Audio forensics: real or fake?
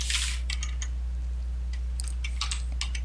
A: real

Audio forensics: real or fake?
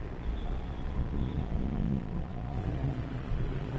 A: fake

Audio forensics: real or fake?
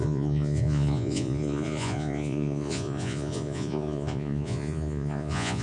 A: fake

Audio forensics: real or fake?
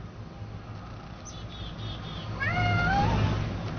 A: real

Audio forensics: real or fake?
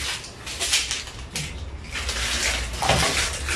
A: real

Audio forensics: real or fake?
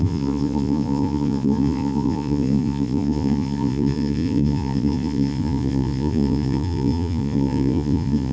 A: fake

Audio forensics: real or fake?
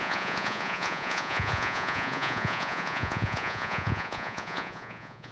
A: fake